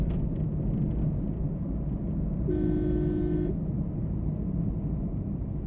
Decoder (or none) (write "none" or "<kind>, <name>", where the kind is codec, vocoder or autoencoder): none